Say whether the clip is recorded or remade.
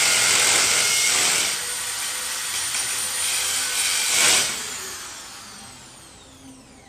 recorded